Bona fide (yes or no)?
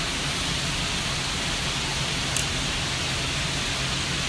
yes